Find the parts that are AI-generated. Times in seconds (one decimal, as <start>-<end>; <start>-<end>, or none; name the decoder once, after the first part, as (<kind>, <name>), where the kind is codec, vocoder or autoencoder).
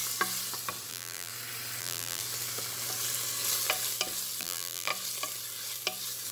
0.9-1.3 (vocoder, BigVGAN v2); 1.8-2.2; 4.4-4.9